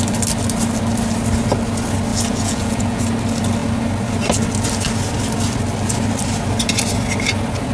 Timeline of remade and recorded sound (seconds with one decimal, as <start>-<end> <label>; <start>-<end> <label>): 0.0-2.1 recorded; 2.1-3.0 remade; 3.0-7.7 recorded